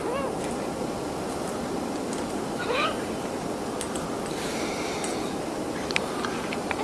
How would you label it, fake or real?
real